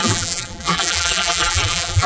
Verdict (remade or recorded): remade